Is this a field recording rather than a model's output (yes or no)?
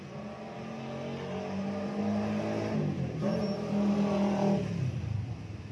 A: yes